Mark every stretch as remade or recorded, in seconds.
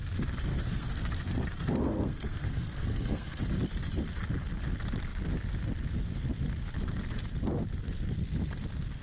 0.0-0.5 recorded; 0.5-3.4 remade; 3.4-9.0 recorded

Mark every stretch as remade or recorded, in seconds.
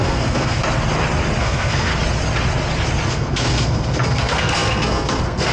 0.0-0.6 remade; 0.6-1.4 recorded; 1.4-1.9 remade; 1.9-3.1 recorded; 3.1-5.5 remade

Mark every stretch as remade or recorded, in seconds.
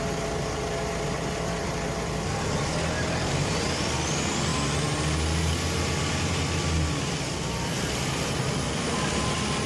0.0-9.7 recorded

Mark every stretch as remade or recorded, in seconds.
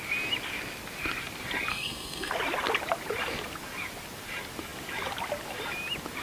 0.0-1.7 recorded; 1.7-2.3 remade; 2.3-6.2 recorded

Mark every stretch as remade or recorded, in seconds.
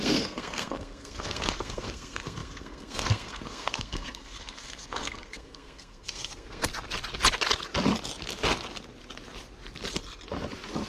0.0-6.7 remade; 6.7-10.9 recorded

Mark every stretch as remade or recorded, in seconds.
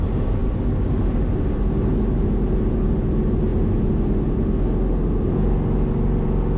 0.0-6.6 recorded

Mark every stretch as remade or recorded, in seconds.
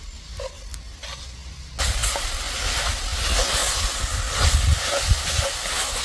0.0-6.0 recorded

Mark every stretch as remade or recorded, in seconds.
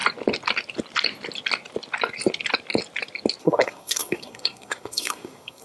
0.0-3.4 recorded; 3.4-5.6 remade